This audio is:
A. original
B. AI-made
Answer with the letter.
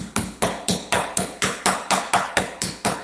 B